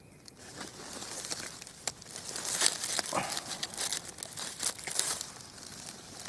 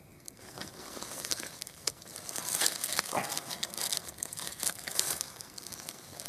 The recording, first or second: first